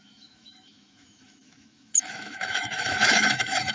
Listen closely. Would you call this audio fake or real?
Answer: fake